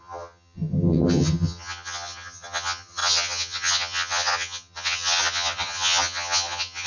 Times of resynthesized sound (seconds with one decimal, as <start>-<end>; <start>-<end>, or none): 0.0-6.9

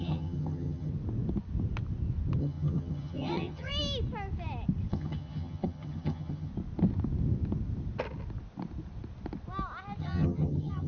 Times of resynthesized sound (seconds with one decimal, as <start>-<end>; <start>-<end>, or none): 0.0-0.9; 2.4-3.7; 4.9-6.5; 10.0-10.9

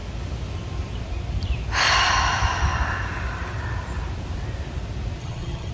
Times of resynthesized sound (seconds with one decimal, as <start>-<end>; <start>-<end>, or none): 5.2-5.7

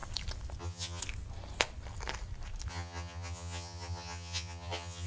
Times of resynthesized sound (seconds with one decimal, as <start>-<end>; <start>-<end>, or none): 0.6-1.0; 2.7-5.1

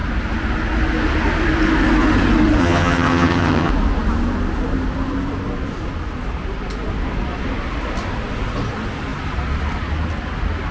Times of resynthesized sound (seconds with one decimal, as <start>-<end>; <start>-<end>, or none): 2.6-3.7